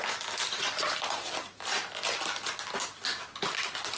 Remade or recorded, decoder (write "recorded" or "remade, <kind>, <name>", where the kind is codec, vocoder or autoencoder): recorded